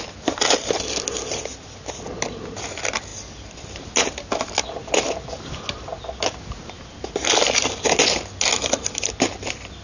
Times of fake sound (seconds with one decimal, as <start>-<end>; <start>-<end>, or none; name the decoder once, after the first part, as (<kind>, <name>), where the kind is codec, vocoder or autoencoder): none